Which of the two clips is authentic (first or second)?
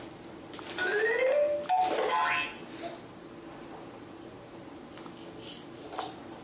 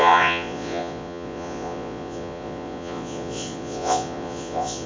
first